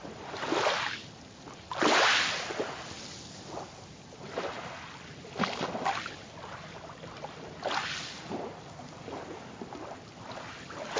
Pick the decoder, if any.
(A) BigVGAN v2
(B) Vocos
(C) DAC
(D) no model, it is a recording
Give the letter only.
D